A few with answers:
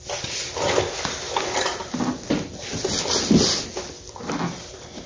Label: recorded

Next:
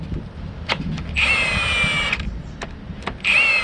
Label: recorded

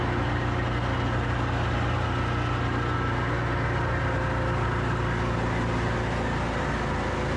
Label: recorded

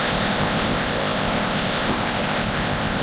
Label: remade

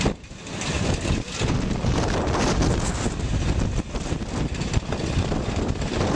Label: recorded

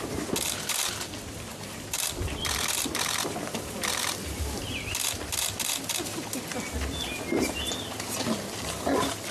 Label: recorded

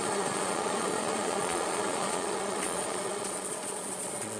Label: remade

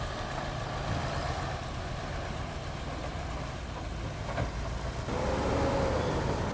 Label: recorded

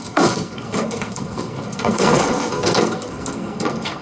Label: remade